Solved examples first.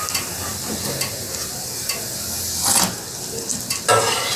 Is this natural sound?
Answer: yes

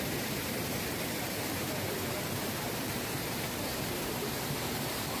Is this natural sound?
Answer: no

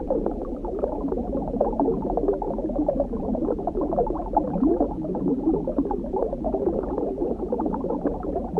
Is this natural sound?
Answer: no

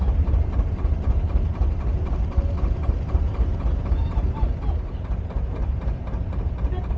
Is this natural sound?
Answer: no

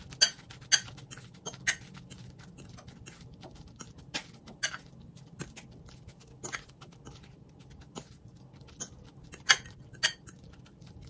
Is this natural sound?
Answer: yes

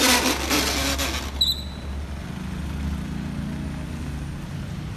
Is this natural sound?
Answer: yes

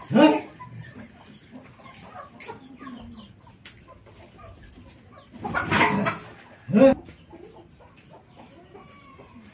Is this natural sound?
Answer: yes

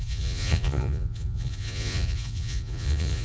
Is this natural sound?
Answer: no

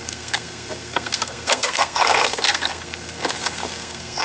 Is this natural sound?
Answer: no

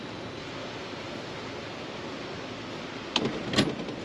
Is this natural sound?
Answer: yes